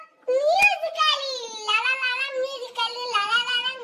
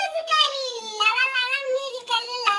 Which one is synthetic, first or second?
second